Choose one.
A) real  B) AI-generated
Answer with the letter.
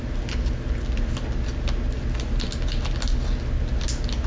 A